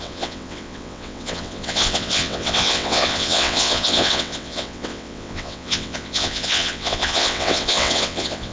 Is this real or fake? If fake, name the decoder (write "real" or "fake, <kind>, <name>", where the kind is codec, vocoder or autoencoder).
fake, vocoder, WaveNeXt